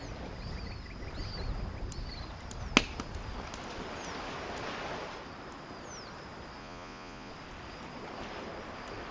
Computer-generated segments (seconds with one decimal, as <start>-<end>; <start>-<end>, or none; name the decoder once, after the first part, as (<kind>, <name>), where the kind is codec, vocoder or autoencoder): 6.6-7.3 (vocoder, Vocos)